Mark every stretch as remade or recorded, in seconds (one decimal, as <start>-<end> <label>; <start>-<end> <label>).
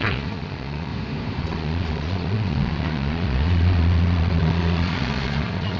0.0-0.9 remade; 0.9-1.4 recorded; 1.4-5.8 remade